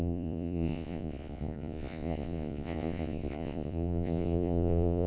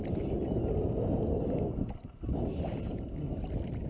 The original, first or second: second